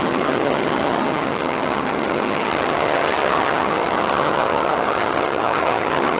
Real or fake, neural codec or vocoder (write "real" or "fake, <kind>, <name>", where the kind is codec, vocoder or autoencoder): fake, vocoder, HiFi-GAN